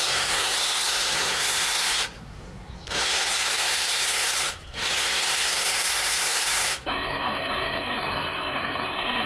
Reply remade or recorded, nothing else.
remade